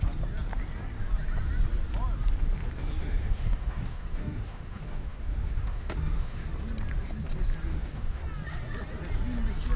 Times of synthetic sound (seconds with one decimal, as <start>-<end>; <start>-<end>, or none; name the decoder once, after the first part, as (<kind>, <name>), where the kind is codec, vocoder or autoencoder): 3.0-6.5 (autoencoder, DAC-VAE); 7.7-8.2